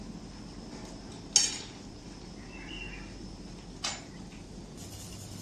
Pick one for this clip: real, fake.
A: real